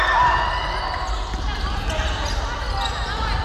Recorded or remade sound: recorded